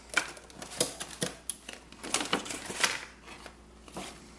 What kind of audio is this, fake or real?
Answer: real